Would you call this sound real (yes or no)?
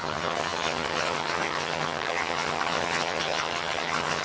no